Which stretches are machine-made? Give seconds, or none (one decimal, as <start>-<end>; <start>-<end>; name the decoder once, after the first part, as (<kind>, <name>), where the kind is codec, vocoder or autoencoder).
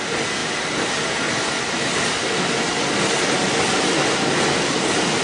none